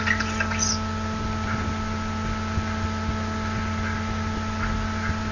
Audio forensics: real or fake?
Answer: real